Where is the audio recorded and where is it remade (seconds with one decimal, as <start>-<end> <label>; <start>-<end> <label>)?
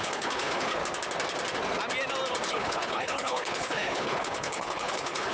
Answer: 0.0-0.8 remade; 0.8-2.5 recorded; 2.5-5.3 remade